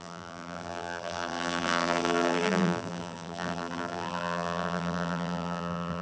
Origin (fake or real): fake